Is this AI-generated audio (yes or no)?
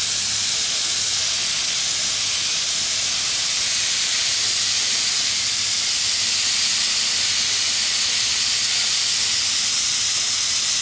no